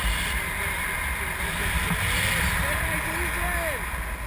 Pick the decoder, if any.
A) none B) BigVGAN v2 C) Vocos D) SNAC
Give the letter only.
A